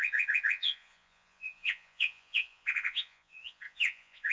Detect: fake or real fake